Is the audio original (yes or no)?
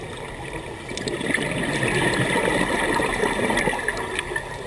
yes